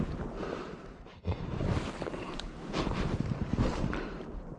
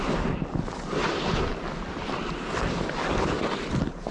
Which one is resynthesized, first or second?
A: first